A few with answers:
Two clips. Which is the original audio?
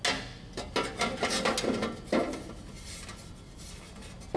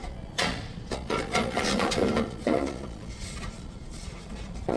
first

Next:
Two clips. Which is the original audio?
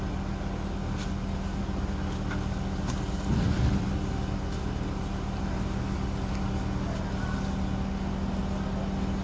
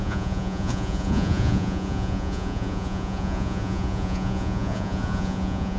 first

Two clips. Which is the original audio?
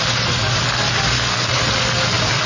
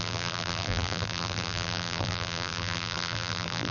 first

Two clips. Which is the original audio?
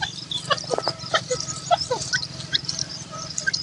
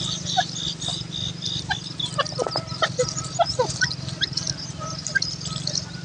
second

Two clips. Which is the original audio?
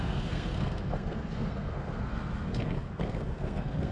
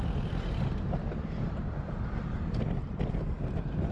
second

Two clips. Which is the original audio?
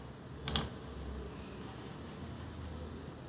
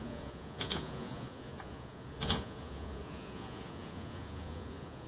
first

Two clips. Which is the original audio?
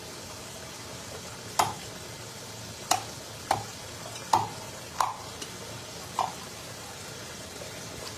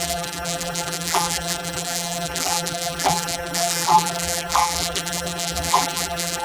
first